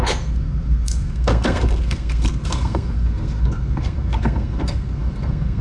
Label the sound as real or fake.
fake